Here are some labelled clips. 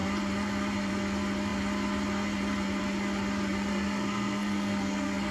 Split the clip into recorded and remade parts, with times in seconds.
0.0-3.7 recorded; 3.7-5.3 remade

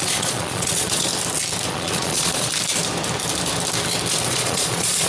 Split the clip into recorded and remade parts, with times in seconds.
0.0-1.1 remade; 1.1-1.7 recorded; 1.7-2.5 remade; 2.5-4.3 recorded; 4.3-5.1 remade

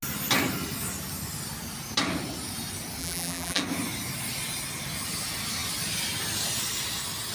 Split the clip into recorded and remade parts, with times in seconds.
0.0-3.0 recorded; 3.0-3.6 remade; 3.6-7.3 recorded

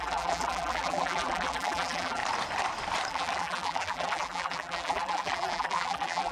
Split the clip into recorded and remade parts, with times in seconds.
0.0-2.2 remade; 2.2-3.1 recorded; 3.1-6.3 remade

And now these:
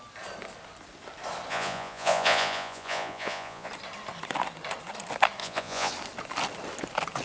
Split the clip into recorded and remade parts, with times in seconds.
0.0-1.5 recorded; 1.5-3.7 remade; 3.7-5.4 recorded; 5.4-5.9 remade; 5.9-7.2 recorded

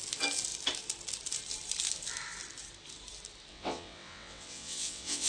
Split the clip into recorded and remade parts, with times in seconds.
0.0-3.5 recorded; 3.5-5.3 remade

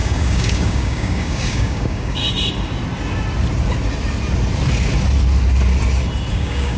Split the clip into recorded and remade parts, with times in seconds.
0.0-2.2 remade; 2.2-6.3 recorded; 6.3-6.8 remade

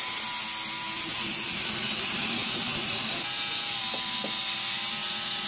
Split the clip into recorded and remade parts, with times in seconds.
0.0-5.5 recorded